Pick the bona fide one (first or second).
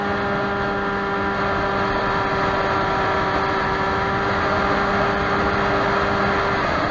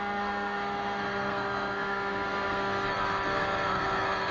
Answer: first